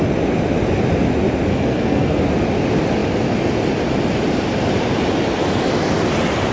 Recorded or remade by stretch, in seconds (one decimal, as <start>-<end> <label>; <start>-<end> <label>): 0.0-1.5 recorded; 1.5-2.2 remade; 2.2-6.5 recorded